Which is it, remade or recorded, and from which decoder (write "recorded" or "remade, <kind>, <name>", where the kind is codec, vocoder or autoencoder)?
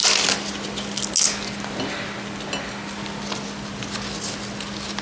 recorded